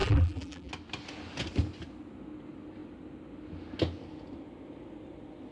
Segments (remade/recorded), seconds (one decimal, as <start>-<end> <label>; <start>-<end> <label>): 0.0-0.7 remade; 0.7-5.5 recorded